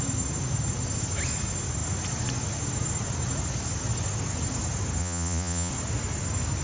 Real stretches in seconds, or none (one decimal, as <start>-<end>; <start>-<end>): 0.0-5.0; 5.7-6.6